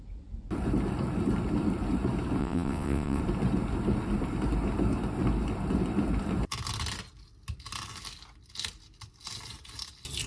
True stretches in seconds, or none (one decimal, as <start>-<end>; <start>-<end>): 0.0-2.4; 3.2-10.3